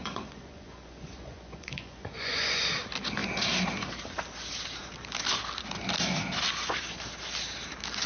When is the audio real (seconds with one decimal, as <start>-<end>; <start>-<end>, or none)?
2.7-8.1